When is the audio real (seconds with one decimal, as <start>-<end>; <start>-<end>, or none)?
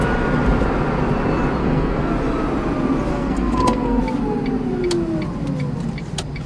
0.0-1.6; 2.1-3.1; 4.0-6.5